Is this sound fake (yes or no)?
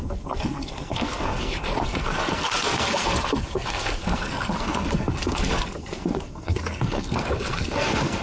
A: yes